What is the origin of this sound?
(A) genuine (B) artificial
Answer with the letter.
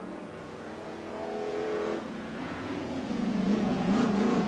B